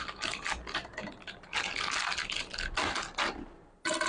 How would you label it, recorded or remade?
recorded